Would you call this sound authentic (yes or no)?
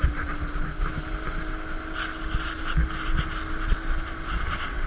yes